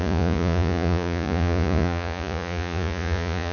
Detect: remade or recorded remade